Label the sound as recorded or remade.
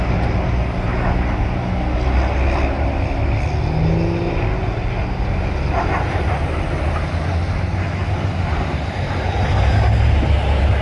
recorded